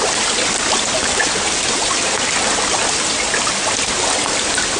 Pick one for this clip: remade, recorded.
recorded